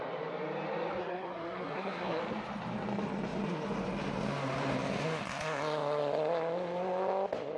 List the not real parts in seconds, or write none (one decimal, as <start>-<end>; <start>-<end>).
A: 1.0-2.2